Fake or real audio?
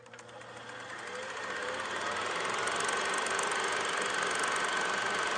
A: real